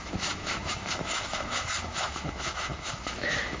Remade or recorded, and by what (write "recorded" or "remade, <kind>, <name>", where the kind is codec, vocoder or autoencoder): remade, autoencoder, DAC-VAE